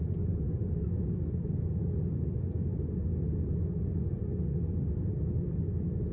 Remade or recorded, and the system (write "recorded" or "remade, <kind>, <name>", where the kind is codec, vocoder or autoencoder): recorded